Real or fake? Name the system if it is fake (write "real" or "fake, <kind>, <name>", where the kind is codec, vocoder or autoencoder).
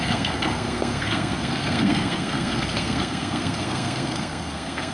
fake, codec, SNAC